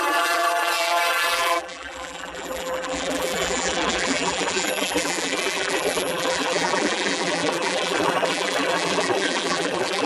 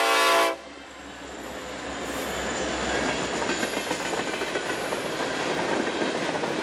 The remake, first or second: first